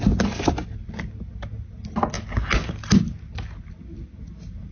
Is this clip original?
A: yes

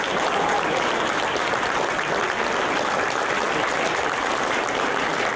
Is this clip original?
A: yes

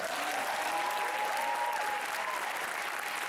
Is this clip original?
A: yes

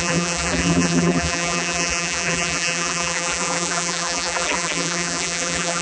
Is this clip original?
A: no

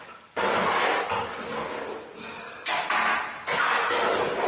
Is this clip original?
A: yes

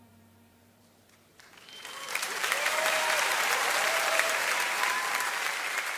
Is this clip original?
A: no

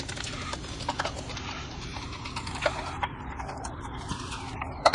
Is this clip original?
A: no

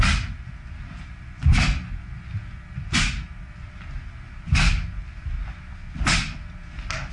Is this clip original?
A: yes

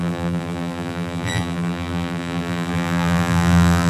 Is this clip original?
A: no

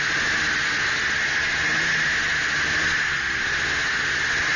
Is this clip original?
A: yes